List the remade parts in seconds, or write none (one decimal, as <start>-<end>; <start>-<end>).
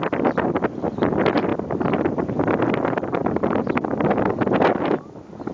none